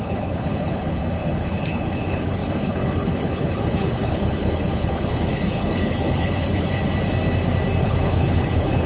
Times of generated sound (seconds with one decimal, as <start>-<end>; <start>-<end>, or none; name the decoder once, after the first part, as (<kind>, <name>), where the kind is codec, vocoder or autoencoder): 0.0-6.9 (codec, HILCodec); 7.8-8.9